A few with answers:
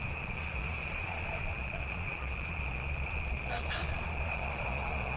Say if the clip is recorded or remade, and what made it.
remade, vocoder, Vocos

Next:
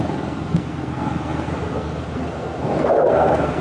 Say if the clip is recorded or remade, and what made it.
remade, codec, SNAC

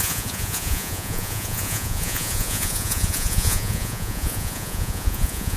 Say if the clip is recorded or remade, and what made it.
remade, vocoder, Vocos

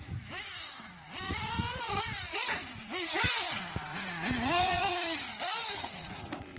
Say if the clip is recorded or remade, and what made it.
remade, vocoder, Vocos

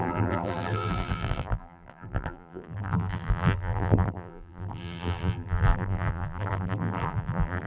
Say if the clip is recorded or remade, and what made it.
remade, vocoder, BigVGAN v2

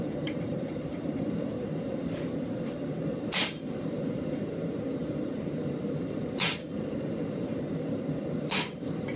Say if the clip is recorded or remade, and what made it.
remade, vocoder, BigVGAN v2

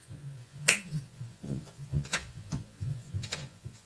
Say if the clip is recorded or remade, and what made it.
remade, vocoder, Vocos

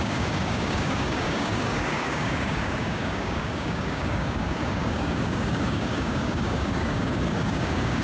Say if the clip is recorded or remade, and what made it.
remade, codec, DAC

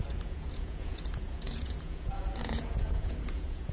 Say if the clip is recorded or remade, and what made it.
remade, vocoder, Vocos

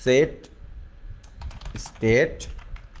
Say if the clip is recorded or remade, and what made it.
recorded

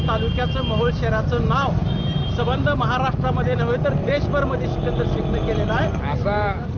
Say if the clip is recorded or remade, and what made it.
recorded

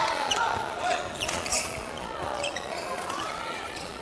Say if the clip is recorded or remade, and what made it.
remade, vocoder, Vocos